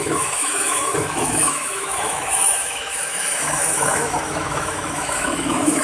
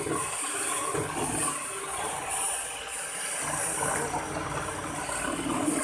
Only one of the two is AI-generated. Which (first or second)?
first